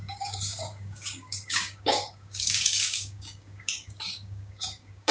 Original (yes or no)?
no